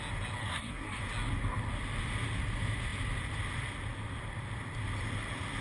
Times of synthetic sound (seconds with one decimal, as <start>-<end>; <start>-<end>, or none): 0.4-1.0